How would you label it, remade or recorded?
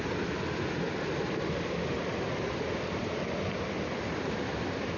recorded